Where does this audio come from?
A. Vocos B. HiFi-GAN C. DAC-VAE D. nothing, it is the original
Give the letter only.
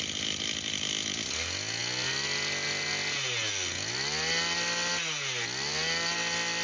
D